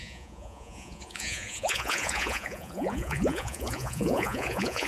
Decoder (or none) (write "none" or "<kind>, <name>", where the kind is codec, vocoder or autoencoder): vocoder, Vocos